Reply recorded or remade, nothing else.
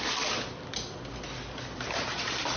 recorded